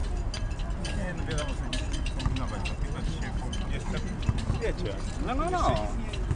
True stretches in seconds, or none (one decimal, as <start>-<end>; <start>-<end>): 0.0-6.4